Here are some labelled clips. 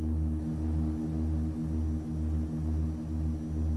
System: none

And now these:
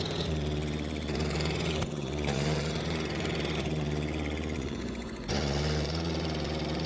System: vocoder, Vocos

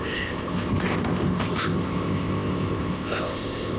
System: codec, ZipCodec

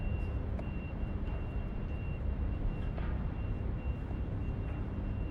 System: vocoder, BigVGAN v2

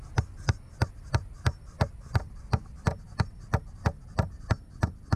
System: none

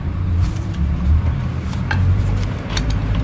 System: vocoder, BigVGAN v2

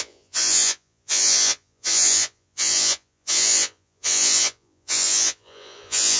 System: vocoder, Vocos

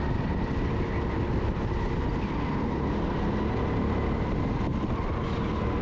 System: none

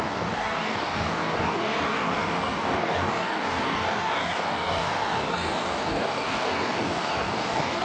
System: codec, DAC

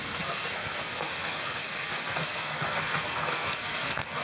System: codec, SNAC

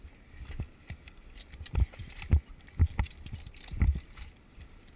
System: none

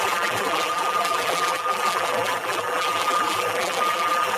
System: vocoder, BigVGAN v2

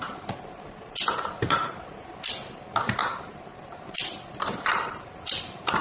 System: none